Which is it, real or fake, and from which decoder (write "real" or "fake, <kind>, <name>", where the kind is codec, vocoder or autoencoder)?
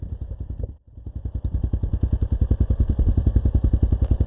real